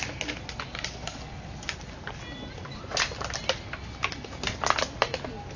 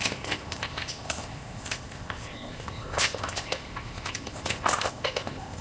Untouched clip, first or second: first